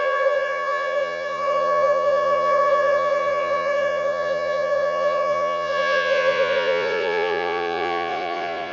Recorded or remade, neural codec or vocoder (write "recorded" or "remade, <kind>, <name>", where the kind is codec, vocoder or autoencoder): remade, vocoder, Vocos